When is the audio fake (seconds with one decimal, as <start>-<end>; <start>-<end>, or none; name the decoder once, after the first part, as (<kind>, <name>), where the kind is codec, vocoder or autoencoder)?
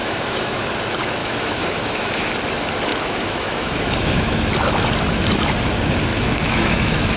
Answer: 0.0-0.7 (autoencoder, DAC-VAE); 1.2-2.3; 2.9-4.5; 6.1-7.2